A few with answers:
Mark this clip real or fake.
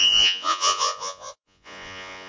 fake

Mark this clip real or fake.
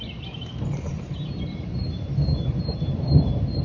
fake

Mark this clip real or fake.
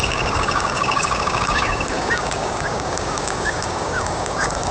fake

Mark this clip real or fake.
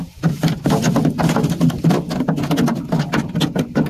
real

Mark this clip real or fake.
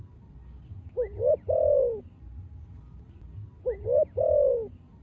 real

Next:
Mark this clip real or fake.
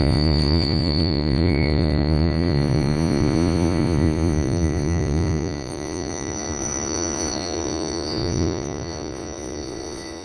fake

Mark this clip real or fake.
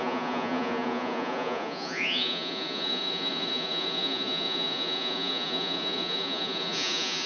fake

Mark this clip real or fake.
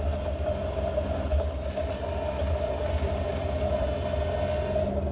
real